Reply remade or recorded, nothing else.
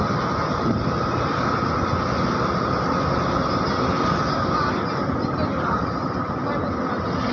recorded